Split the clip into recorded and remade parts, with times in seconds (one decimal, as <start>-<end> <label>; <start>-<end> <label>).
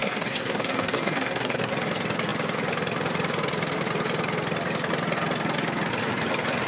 0.0-1.7 remade; 1.7-6.7 recorded